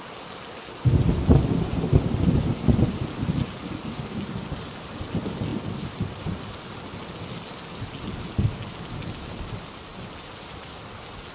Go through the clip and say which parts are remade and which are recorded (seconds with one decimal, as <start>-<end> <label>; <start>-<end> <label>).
0.0-11.3 recorded